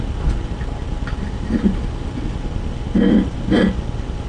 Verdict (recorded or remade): recorded